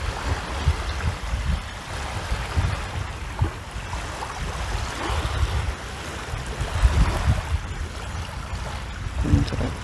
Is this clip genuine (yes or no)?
yes